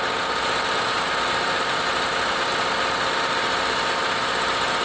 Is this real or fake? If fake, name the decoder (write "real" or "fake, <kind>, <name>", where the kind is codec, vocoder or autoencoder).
real